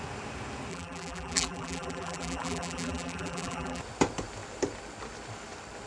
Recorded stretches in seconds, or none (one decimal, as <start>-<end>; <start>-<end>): 0.0-0.7; 3.8-5.9